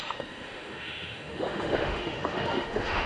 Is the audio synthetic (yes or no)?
yes